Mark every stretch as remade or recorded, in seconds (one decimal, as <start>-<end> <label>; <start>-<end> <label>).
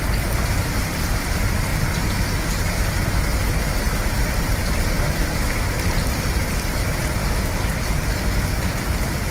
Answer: 0.0-1.7 remade; 1.7-4.1 recorded; 4.1-7.2 remade; 7.2-9.3 recorded